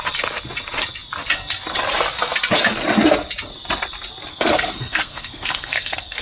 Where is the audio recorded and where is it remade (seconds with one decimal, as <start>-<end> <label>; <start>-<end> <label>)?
0.0-4.3 recorded; 4.3-6.2 remade